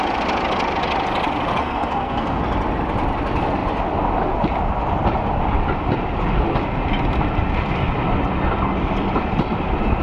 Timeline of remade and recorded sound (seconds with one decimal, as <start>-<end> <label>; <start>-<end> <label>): 0.0-1.6 recorded; 1.6-2.4 remade; 2.4-10.0 recorded